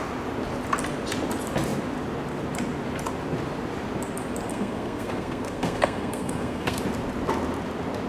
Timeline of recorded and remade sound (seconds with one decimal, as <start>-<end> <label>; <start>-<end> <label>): 0.0-4.5 recorded; 4.5-6.8 remade; 6.8-8.1 recorded